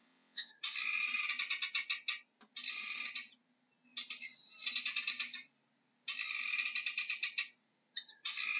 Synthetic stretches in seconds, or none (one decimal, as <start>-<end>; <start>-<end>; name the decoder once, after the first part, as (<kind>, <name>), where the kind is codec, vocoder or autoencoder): 0.0-0.5 (vocoder, WaveNeXt)